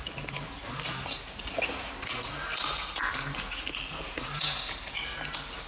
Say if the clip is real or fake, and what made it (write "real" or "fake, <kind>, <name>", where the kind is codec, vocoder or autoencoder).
real